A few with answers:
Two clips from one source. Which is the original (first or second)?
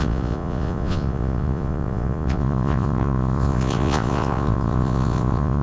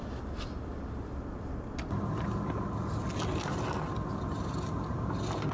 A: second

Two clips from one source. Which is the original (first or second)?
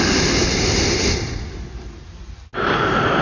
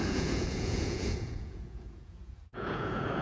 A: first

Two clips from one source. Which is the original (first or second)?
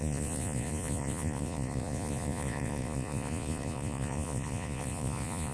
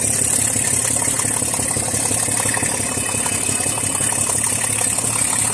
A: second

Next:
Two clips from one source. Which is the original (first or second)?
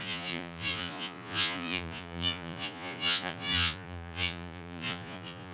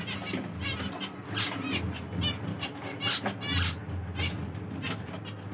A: second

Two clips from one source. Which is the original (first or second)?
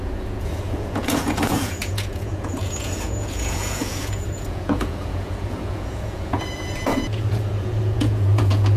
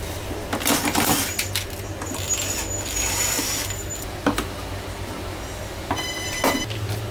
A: second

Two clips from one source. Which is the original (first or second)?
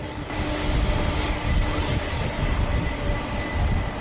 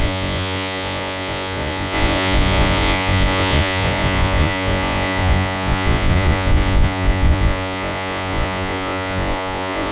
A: first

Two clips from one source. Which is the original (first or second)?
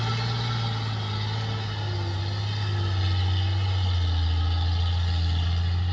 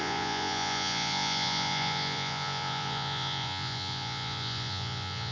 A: first